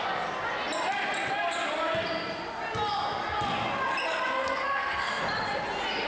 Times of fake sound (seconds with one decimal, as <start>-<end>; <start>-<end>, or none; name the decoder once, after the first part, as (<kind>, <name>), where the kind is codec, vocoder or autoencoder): 4.4-5.2 (codec, SNAC)